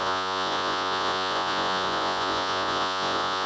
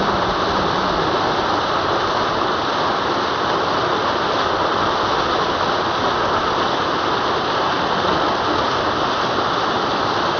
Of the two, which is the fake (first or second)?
first